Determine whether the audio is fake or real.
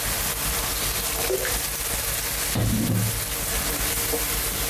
real